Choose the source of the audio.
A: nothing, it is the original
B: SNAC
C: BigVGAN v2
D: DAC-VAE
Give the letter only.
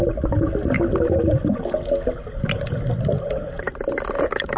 A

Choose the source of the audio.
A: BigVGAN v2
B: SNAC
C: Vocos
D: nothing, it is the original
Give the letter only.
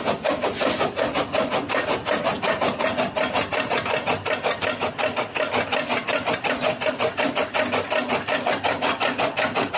D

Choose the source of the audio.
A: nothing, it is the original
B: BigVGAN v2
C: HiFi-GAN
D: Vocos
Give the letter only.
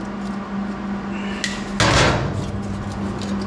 A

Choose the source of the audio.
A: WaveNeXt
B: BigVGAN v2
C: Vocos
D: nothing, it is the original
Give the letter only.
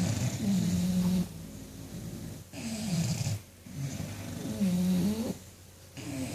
D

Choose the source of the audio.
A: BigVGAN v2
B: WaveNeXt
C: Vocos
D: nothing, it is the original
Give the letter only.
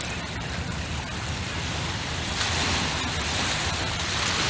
D